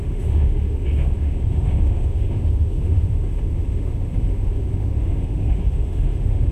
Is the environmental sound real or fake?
fake